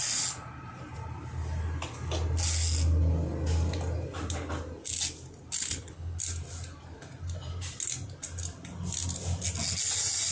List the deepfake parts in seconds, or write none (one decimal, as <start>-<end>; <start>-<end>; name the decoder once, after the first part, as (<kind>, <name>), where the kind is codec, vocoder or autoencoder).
5.6-6.2 (codec, HILCodec)

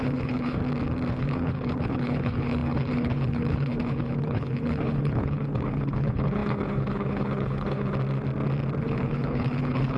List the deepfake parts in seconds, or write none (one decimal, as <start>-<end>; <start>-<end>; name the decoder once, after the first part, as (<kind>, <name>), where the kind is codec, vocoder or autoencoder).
0.0-0.6 (codec, HILCodec); 1.1-7.9; 8.8-10.0